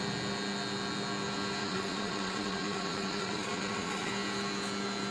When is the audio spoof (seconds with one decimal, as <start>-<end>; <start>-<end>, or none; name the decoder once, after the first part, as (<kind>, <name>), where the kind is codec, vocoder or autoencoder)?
1.6-4.1 (vocoder, Vocos)